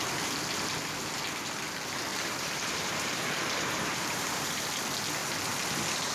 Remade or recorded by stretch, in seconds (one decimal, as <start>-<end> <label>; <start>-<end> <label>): 0.0-2.1 recorded; 2.1-4.6 remade; 4.6-6.1 recorded

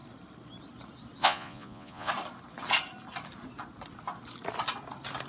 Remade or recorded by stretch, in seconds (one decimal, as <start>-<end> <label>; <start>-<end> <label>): 0.0-1.2 recorded; 1.2-2.1 remade; 2.1-5.3 recorded